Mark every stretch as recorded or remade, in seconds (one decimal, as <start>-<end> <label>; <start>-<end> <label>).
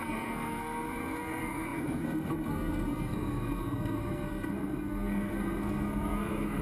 0.0-6.6 remade